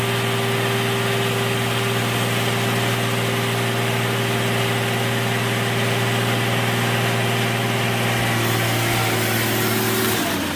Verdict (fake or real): real